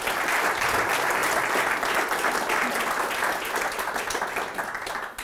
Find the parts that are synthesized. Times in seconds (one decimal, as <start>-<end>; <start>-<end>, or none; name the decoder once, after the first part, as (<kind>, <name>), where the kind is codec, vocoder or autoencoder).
none